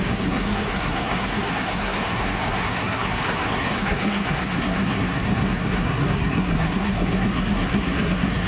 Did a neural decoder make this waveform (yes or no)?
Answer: yes